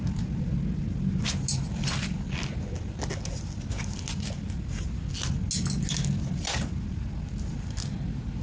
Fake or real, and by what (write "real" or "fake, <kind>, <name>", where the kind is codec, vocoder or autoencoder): real